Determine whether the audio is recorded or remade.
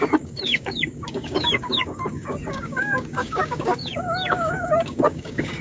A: remade